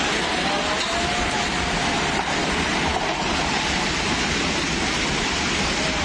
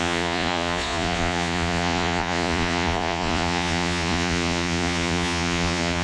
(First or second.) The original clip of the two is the first